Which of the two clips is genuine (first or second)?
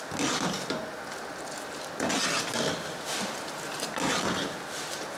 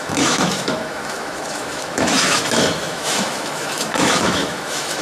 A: first